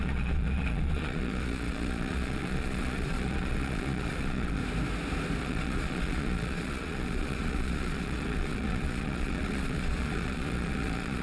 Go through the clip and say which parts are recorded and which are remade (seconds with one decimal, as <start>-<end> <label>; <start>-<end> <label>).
0.0-4.6 remade; 4.6-5.4 recorded; 5.4-11.2 remade